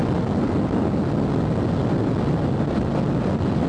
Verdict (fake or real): real